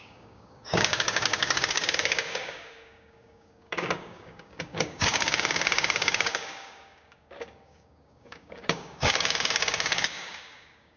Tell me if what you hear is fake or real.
fake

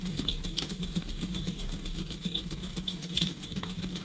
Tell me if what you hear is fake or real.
fake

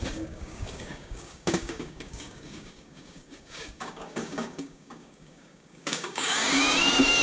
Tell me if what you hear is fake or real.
fake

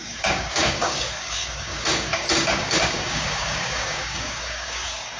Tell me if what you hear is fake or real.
fake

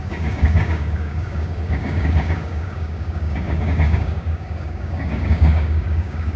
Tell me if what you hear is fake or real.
fake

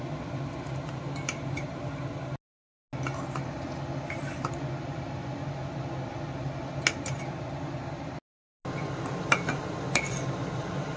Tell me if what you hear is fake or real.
real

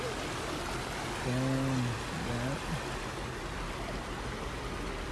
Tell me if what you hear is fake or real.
real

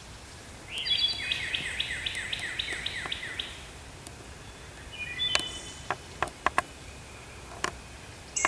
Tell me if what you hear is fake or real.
real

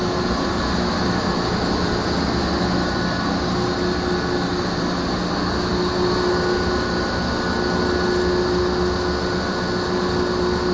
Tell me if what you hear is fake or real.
real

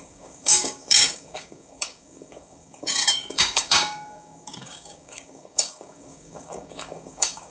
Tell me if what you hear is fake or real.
fake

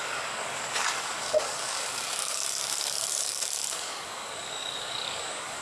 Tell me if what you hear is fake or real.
fake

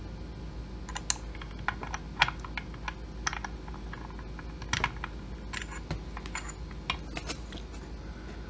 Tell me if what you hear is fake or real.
real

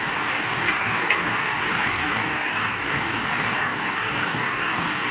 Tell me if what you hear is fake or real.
fake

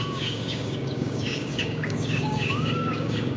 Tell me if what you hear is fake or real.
fake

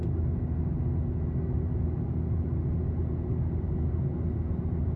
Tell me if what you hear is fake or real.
real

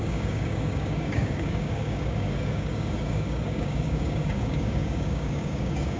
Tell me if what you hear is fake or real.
fake